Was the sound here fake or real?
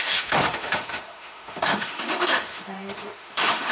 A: fake